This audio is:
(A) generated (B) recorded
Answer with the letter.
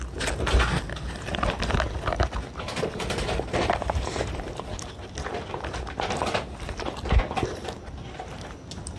B